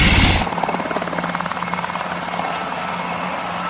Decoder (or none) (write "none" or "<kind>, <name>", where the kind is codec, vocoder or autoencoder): none